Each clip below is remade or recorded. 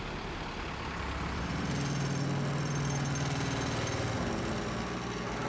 recorded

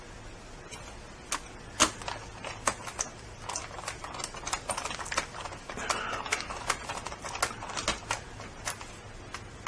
recorded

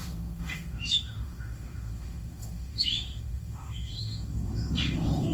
remade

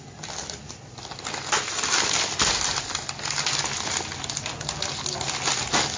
recorded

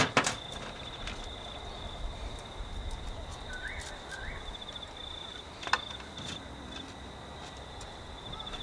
recorded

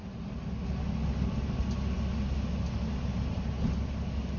recorded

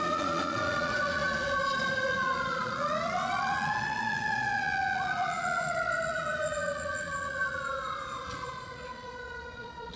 remade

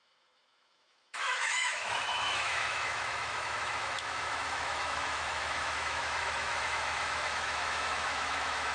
remade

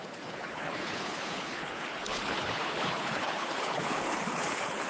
remade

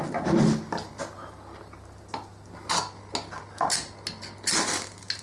recorded